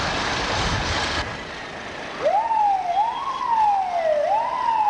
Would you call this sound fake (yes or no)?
no